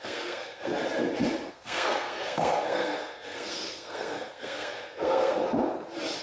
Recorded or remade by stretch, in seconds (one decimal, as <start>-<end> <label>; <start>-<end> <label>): 0.0-0.7 remade; 0.7-1.5 recorded; 1.5-5.4 remade; 5.4-6.2 recorded